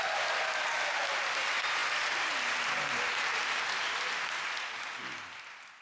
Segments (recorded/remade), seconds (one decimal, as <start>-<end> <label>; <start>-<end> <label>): 0.0-5.8 recorded